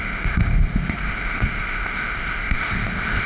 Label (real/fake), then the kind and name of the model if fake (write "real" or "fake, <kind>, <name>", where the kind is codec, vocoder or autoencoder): fake, codec, ZipCodec